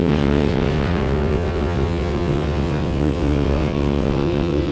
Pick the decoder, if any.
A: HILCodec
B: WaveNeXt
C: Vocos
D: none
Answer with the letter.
B